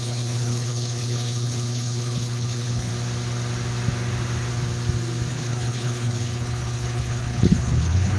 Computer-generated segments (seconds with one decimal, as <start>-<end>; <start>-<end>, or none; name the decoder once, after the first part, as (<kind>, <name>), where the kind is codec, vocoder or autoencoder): 0.0-2.9 (codec, HILCodec); 5.3-8.2